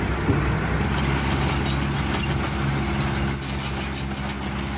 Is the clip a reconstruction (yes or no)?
no